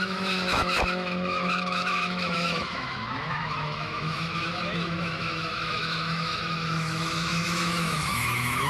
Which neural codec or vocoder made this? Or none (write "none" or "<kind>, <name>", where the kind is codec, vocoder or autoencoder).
autoencoder, DAC-VAE